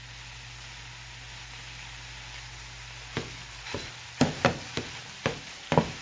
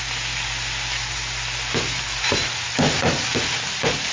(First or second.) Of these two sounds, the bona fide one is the second